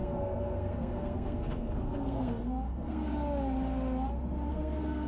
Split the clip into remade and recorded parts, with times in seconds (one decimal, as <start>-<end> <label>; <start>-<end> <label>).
0.0-3.1 remade; 3.1-4.5 recorded; 4.5-5.1 remade